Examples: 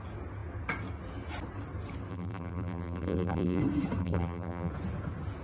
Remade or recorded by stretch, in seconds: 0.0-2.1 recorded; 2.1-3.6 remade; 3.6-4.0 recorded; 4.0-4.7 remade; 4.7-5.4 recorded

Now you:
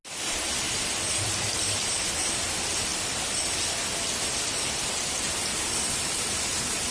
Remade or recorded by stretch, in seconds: 0.0-6.9 recorded